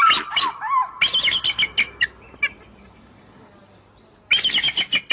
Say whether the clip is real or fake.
real